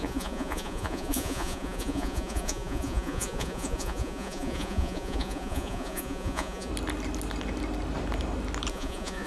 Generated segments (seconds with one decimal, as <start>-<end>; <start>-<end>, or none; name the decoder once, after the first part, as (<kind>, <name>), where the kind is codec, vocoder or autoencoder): 0.0-6.7 (vocoder, Vocos); 8.7-9.3